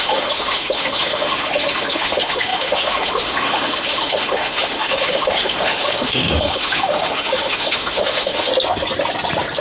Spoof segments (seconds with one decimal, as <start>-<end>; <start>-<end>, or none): 0.0-8.5